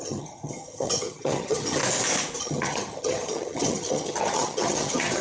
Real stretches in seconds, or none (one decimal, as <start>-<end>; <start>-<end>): 1.8-2.4